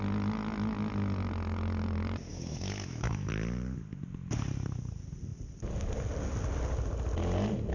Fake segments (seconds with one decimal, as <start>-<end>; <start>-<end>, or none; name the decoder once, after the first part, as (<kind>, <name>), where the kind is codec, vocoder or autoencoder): 2.3-3.3 (autoencoder, DAC-VAE)